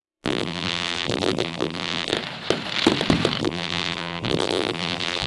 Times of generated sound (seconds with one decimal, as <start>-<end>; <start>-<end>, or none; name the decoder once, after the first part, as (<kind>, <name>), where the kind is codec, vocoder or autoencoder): 0.0-2.1 (vocoder, BigVGAN v2); 3.4-5.3